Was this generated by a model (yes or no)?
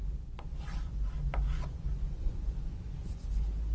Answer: yes